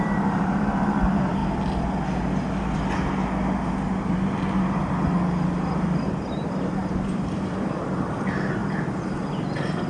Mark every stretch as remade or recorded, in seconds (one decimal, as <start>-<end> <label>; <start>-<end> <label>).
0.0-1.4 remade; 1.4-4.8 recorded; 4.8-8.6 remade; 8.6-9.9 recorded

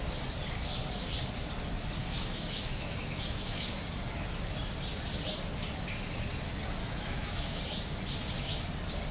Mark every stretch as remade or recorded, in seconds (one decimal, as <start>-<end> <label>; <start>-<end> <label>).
0.0-2.0 recorded; 2.0-3.8 remade; 3.8-6.8 recorded; 6.8-7.6 remade; 7.6-9.1 recorded

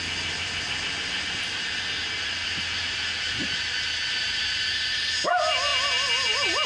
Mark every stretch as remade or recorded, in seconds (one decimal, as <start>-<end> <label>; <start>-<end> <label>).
0.0-6.7 recorded

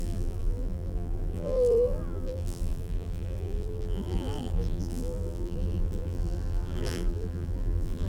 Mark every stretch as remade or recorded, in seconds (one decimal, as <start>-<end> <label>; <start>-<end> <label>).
0.0-8.1 remade

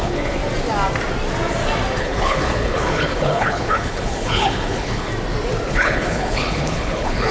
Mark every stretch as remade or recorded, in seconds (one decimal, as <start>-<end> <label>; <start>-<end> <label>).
0.0-0.4 remade; 0.4-2.0 recorded; 2.0-5.1 remade; 5.1-5.7 recorded; 5.7-7.3 remade